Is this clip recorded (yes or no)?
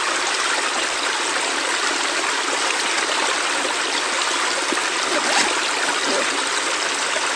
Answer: yes